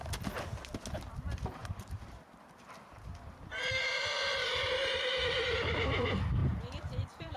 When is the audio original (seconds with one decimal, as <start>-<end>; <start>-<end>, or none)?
0.0-1.6; 2.6-4.2; 5.1-6.4